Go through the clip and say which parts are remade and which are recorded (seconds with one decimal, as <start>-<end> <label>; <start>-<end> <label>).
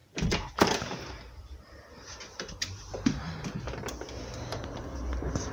0.0-3.3 remade; 3.3-5.5 recorded